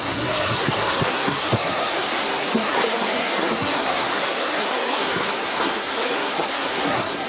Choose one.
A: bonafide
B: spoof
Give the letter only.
B